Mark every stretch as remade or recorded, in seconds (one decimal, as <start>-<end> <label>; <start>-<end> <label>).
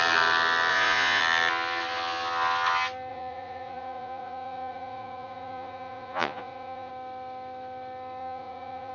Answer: 0.0-0.7 recorded; 0.7-1.2 remade; 1.2-3.1 recorded; 3.1-6.9 remade; 6.9-8.2 recorded; 8.2-8.9 remade